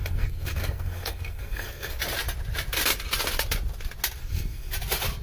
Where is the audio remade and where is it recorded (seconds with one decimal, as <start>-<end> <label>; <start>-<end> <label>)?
0.0-2.0 remade; 2.0-4.2 recorded; 4.2-4.7 remade; 4.7-5.2 recorded